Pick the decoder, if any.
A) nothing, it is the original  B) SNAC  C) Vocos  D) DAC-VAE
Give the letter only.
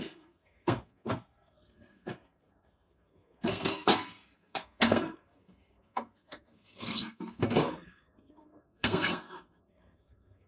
B